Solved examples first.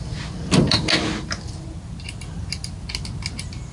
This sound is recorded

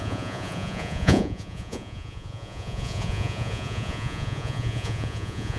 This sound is remade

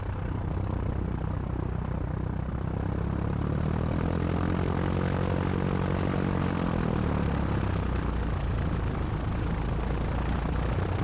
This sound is recorded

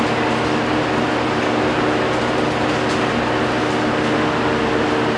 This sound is recorded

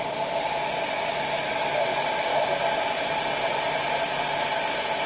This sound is recorded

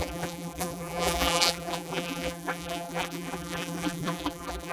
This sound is remade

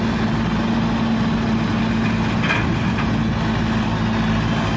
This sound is recorded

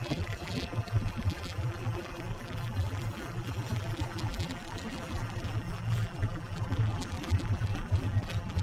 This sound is remade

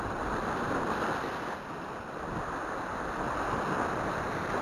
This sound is recorded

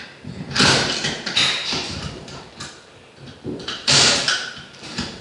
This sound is remade